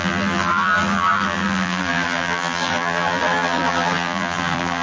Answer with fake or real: fake